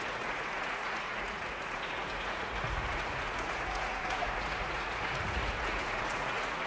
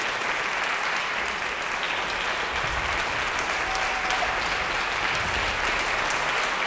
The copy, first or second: first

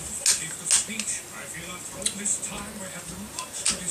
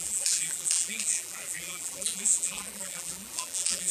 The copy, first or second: second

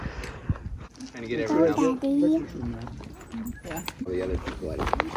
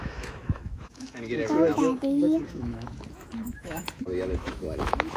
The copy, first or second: second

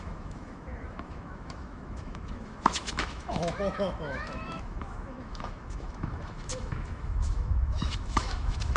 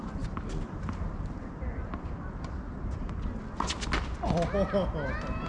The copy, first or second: first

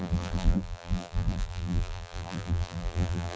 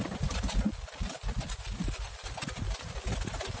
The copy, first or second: first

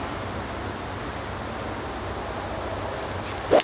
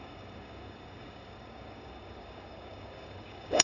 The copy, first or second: second